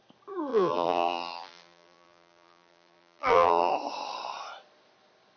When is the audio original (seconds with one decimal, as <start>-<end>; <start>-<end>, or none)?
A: 0.0-0.5; 3.7-5.4